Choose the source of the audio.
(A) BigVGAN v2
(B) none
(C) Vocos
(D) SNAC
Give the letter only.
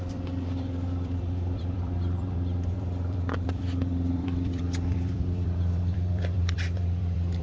A